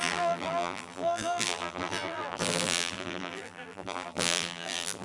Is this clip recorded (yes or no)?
no